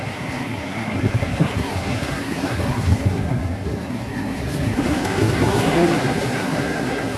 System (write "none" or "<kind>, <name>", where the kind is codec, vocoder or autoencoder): codec, SNAC